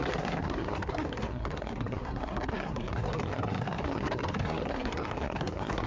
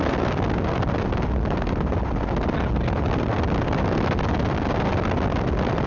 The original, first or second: second